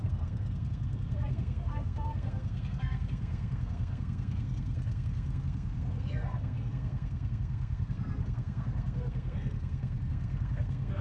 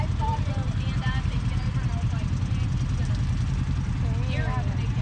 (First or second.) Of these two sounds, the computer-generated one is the first